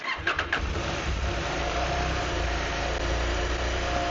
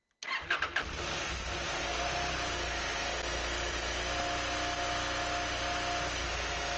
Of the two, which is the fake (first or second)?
first